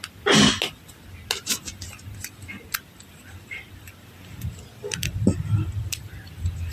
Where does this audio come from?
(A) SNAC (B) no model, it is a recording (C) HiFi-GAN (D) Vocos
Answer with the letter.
B